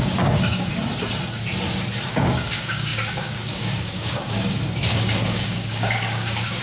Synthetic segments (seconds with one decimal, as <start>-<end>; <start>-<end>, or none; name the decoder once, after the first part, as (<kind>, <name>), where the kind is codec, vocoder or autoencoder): 0.0-0.8 (codec, DAC); 2.1-6.6